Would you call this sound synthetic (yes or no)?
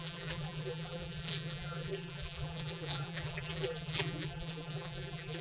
yes